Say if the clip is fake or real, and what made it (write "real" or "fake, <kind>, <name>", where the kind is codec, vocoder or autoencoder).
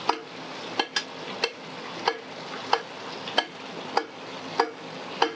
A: real